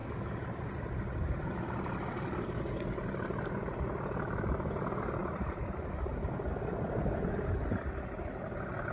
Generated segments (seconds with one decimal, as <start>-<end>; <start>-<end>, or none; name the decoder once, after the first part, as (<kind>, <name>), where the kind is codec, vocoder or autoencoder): none